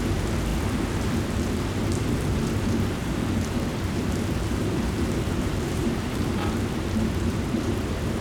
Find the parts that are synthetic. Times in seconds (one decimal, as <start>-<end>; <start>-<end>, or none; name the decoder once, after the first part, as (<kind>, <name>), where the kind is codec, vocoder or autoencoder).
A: 3.7-8.2 (vocoder, BigVGAN v2)